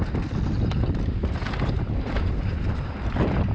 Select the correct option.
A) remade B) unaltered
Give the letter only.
A